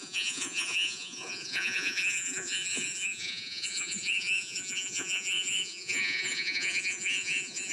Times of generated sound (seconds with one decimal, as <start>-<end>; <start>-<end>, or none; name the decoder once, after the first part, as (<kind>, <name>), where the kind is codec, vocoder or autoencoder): 0.0-7.7 (vocoder, Vocos)